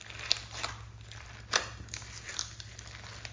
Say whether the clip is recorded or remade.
recorded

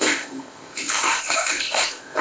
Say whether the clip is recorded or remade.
remade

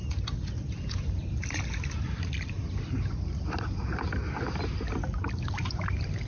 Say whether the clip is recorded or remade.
recorded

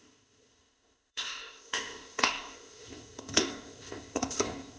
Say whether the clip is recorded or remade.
remade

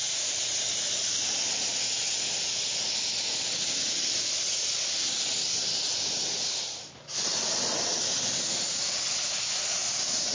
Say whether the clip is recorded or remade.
recorded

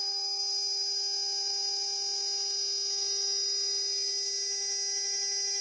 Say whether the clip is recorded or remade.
recorded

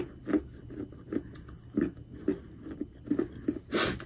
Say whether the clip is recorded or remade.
recorded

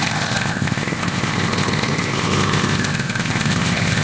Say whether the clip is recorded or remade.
remade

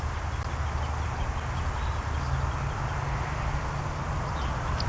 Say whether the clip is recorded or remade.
recorded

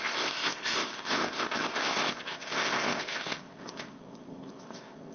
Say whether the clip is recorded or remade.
remade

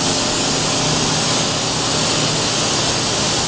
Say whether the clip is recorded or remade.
recorded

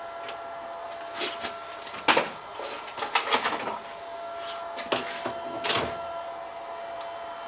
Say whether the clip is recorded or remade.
recorded